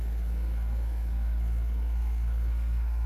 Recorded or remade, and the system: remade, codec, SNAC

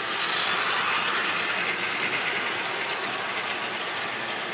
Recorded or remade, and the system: recorded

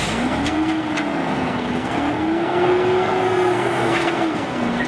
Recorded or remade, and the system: remade, codec, SNAC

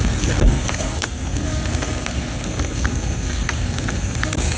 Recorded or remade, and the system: remade, codec, SNAC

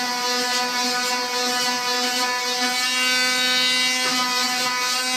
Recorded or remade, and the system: recorded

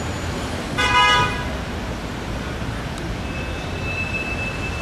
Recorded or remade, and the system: recorded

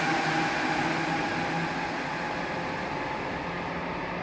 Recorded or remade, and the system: recorded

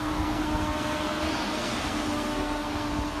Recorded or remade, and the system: remade, codec, SNAC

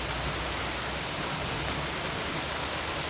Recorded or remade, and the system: recorded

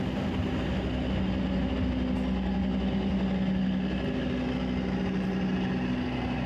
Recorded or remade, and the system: recorded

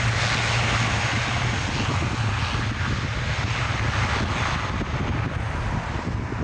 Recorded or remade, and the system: recorded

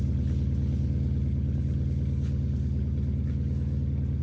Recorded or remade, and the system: recorded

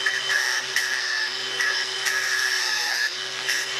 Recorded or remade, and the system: remade, codec, SNAC